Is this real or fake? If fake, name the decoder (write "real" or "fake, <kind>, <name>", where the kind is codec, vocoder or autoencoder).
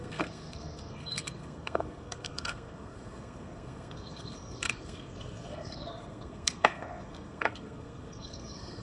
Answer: fake, codec, SNAC